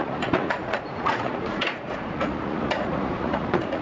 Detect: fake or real fake